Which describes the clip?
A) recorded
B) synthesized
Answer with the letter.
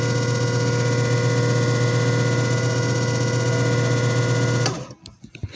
A